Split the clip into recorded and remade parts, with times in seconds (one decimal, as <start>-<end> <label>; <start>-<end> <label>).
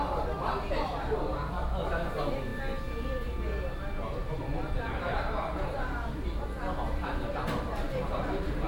0.0-2.5 remade; 2.5-3.7 recorded; 3.7-8.7 remade